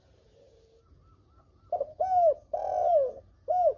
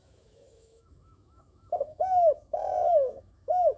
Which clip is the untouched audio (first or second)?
first